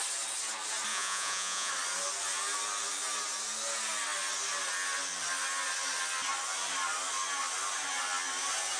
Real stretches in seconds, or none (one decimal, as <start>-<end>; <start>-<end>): 0.0-0.9; 1.7-8.8